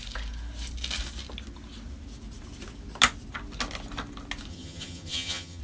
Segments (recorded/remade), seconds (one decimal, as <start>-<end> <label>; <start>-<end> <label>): 0.0-4.5 recorded; 4.5-5.6 remade